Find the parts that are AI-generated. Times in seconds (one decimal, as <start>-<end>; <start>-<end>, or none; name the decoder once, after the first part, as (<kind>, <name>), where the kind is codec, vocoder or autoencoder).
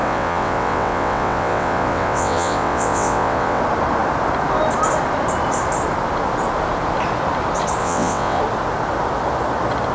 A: 0.0-3.6 (vocoder, WaveNeXt); 7.8-8.4